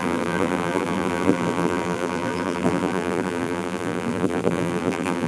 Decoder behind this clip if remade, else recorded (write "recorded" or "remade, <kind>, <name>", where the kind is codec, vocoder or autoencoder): remade, vocoder, BigVGAN v2